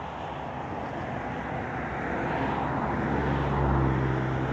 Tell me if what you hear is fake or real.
real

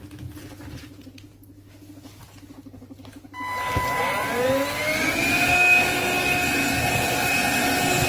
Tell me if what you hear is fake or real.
real